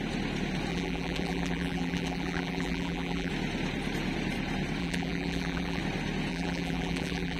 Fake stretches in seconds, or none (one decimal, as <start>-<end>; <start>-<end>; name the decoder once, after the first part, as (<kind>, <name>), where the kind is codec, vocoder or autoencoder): 0.7-3.3 (vocoder, BigVGAN v2); 4.8-5.8; 6.3-7.4

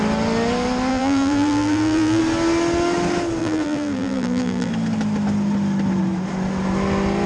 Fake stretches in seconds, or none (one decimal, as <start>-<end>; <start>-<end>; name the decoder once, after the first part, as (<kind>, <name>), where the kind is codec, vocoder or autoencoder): 0.9-2.2 (vocoder, BigVGAN v2); 3.4-4.7

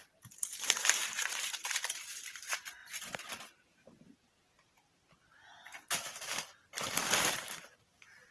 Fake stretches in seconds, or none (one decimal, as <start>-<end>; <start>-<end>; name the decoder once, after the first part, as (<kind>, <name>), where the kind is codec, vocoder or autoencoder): 0.0-8.3 (vocoder, BigVGAN v2)

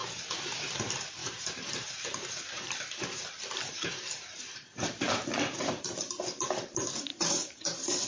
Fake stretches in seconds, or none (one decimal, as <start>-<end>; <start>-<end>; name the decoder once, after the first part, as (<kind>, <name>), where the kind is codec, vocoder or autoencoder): 0.0-0.6 (vocoder, BigVGAN v2); 1.2-6.1; 7.1-8.1